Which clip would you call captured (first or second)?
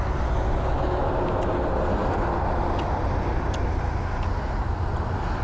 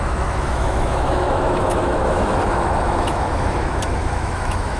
first